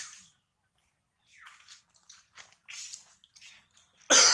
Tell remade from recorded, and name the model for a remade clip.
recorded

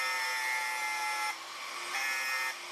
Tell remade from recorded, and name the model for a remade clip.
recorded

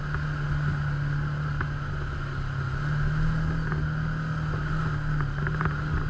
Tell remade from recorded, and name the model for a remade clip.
recorded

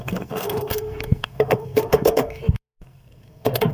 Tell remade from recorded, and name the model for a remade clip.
remade, codec, SNAC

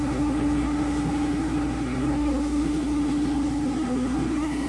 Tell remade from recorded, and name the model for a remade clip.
remade, codec, SNAC